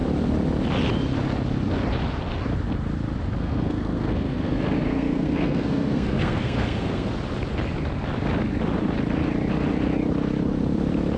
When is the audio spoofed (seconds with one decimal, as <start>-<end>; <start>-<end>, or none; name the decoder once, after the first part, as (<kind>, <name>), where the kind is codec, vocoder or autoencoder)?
3.4-7.1 (codec, SNAC)